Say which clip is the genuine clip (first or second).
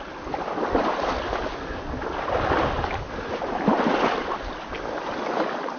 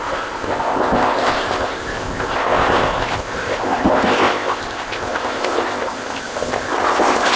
first